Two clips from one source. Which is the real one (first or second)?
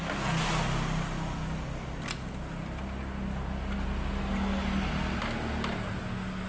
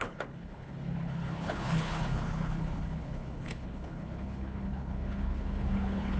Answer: first